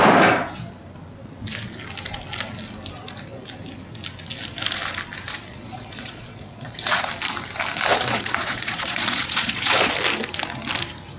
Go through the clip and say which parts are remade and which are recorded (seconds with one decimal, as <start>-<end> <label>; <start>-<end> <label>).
0.0-5.5 recorded; 5.5-7.1 remade; 7.1-7.9 recorded; 7.9-9.9 remade; 9.9-11.2 recorded